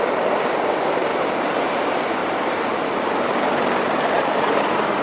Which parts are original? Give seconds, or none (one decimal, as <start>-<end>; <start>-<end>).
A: 0.0-1.1; 1.8-2.2; 4.6-5.0

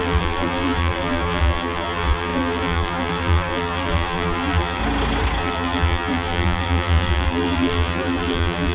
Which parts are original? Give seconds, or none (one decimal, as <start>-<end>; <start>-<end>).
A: 4.8-5.4

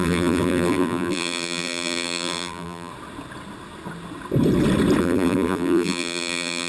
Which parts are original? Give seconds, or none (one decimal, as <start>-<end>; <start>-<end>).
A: 2.9-5.0